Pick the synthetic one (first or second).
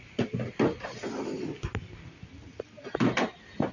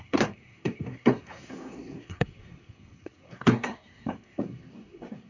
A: second